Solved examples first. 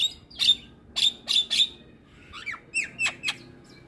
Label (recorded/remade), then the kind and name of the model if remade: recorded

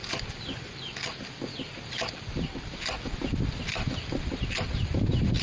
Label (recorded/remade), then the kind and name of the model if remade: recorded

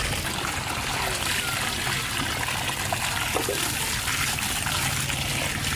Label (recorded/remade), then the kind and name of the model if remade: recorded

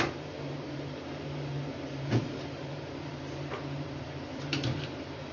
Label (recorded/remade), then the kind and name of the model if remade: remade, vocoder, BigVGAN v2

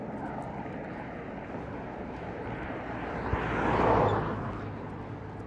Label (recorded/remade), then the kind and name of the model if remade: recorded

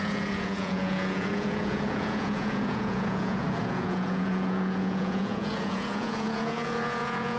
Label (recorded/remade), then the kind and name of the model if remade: remade, vocoder, Vocos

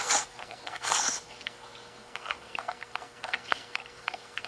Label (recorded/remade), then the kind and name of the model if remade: remade, codec, SNAC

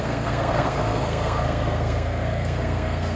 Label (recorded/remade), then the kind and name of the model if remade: remade, codec, SNAC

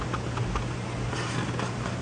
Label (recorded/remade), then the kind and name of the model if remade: recorded